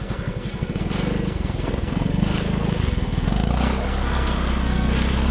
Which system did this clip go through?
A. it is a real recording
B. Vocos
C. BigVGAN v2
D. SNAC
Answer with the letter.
D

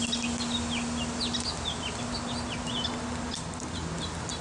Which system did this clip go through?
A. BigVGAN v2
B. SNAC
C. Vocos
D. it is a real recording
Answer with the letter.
D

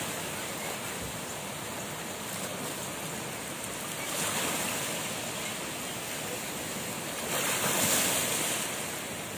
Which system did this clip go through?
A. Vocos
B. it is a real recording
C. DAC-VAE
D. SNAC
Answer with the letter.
B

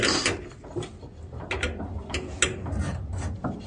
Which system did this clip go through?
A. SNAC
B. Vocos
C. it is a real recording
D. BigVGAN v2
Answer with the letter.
C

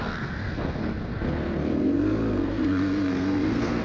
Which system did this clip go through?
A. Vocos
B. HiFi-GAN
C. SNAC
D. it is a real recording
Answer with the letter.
C